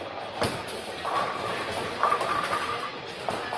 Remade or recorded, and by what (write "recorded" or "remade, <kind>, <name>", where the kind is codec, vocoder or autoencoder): recorded